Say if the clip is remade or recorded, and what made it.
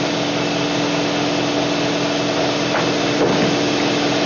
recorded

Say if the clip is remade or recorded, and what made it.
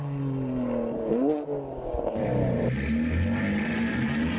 recorded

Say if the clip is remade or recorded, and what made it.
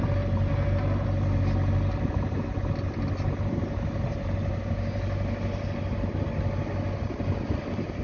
recorded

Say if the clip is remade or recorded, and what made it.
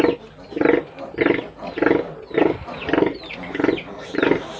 recorded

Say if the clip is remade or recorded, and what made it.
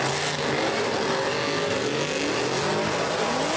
recorded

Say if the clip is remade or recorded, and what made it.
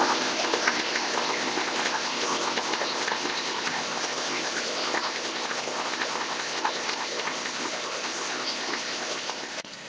remade, codec, ZipCodec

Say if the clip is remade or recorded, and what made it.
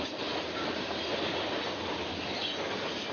recorded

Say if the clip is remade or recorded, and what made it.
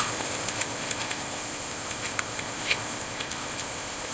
remade, codec, ZipCodec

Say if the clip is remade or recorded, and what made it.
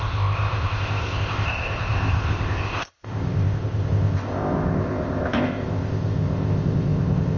remade, codec, ZipCodec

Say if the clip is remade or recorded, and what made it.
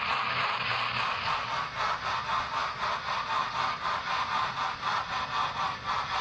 recorded